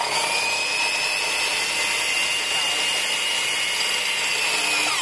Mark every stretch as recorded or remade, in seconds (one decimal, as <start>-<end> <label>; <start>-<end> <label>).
0.0-5.0 recorded